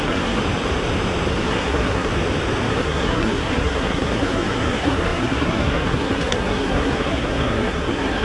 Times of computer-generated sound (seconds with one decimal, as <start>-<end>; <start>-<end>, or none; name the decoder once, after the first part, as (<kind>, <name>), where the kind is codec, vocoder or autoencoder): 0.0-0.4 (codec, SNAC); 1.3-2.1; 2.7-8.2